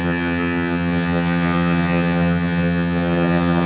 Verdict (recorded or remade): remade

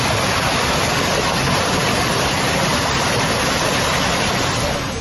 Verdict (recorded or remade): recorded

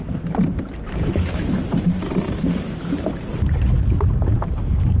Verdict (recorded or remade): remade